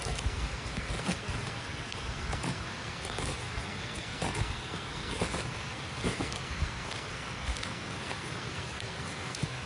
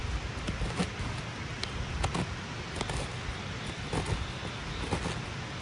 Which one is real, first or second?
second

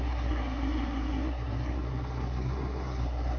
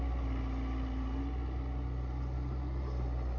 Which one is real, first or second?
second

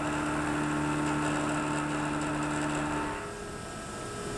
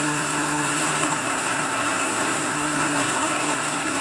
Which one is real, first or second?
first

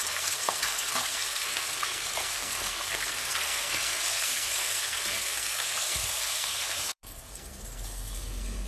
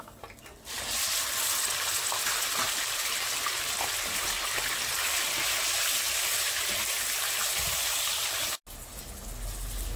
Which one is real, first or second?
second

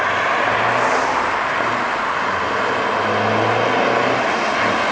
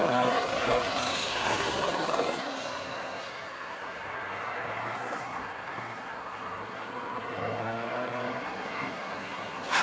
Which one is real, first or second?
first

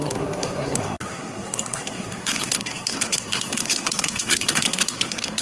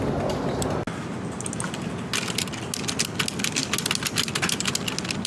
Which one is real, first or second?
second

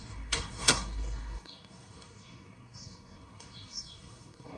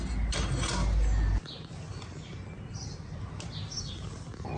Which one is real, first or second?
second